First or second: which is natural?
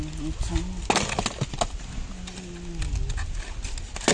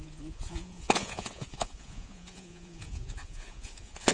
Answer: first